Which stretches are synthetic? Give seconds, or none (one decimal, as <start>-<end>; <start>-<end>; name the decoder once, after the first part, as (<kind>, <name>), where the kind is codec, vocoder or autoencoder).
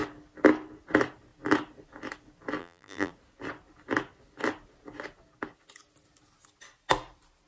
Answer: 2.6-3.1 (vocoder, BigVGAN v2)